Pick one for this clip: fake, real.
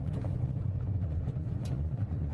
fake